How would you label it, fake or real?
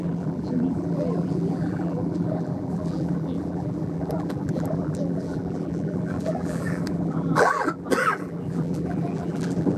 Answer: fake